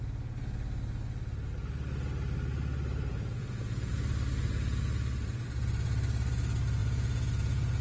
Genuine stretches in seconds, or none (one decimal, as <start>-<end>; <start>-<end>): 0.0-3.1; 3.9-6.8